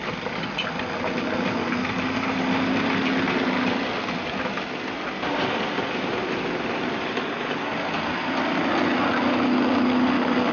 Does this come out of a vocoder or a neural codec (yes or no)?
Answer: no